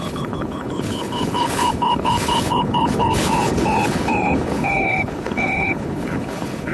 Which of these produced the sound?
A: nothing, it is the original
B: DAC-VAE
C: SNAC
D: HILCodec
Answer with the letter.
D